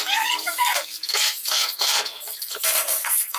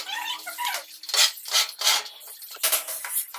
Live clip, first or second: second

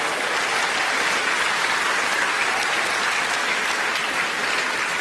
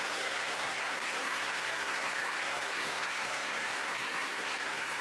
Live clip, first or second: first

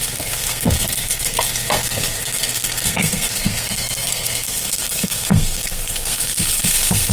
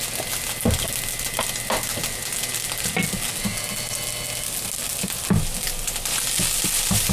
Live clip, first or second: second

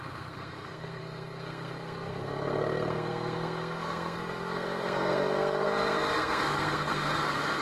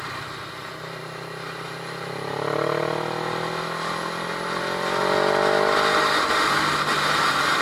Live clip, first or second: second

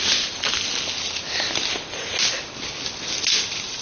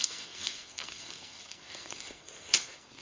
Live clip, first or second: first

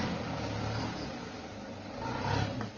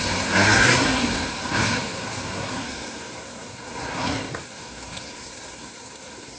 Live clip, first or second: first